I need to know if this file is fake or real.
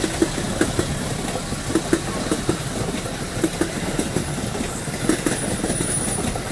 real